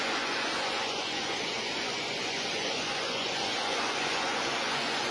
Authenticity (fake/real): fake